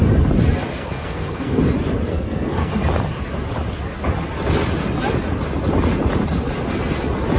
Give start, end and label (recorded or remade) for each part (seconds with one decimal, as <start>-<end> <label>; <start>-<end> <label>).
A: 0.0-0.7 recorded; 0.7-1.6 remade; 1.6-2.1 recorded; 2.1-2.7 remade; 2.7-7.4 recorded